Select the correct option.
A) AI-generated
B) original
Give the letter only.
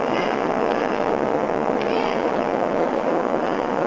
A